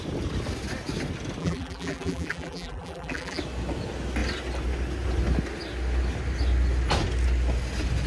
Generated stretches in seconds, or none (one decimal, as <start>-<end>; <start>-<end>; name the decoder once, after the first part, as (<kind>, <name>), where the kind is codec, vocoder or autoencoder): 1.4-3.4 (vocoder, BigVGAN v2)